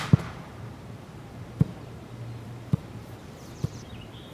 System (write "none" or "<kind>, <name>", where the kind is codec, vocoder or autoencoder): vocoder, BigVGAN v2